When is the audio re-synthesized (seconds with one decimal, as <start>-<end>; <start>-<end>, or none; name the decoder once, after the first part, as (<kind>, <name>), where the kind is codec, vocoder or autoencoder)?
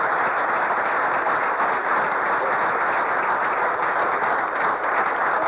none